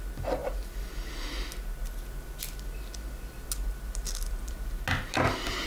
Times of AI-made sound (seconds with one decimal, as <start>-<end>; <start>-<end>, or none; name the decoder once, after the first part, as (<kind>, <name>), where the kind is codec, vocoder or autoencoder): none